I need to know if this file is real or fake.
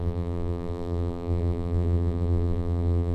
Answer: fake